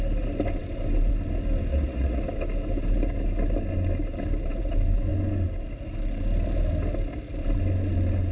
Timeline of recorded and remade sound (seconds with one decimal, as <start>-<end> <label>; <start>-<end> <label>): 0.0-1.7 recorded; 1.7-2.2 remade; 2.2-8.3 recorded